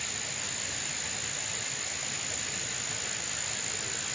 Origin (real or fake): real